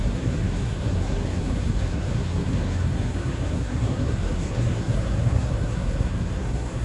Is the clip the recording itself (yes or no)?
no